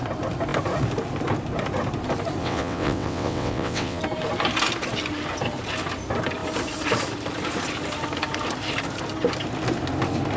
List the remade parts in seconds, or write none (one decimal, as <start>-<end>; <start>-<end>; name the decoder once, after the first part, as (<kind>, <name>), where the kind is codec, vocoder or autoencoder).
2.4-4.0 (vocoder, WaveNeXt)

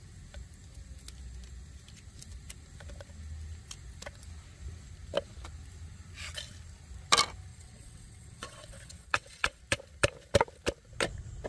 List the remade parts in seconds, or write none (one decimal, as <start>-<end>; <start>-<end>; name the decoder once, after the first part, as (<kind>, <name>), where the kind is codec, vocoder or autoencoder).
7.5-9.6 (vocoder, WaveNeXt)